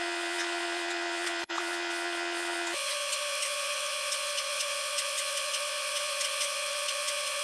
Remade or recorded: remade